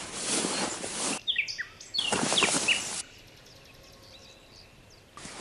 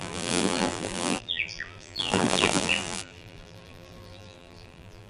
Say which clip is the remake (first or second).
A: second